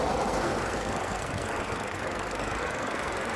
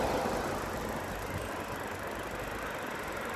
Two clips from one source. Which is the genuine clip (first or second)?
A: second